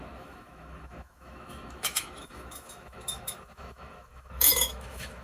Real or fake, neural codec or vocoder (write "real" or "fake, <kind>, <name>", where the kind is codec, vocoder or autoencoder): fake, autoencoder, DAC-VAE